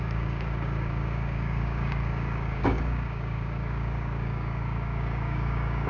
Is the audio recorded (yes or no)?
no